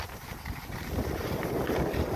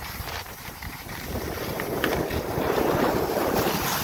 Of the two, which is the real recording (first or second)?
first